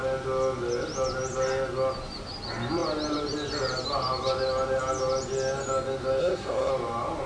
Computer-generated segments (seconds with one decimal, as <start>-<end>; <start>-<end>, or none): 6.2-6.7